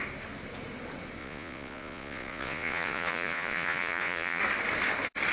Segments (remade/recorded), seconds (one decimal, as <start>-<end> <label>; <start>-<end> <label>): 0.0-1.2 recorded; 1.2-4.4 remade; 4.4-5.3 recorded